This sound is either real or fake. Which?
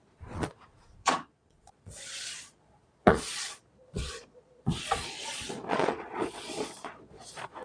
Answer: fake